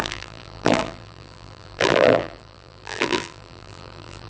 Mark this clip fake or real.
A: fake